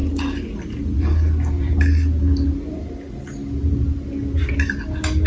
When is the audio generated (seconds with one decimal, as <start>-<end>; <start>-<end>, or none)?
none